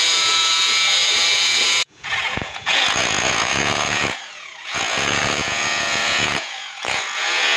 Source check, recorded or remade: remade